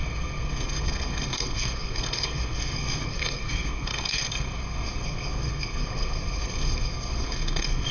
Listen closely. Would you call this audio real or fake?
fake